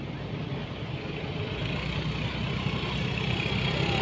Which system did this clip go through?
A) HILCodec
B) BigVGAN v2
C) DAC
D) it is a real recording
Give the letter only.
D